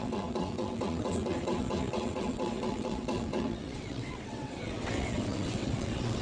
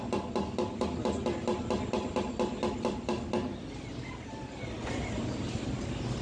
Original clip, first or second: second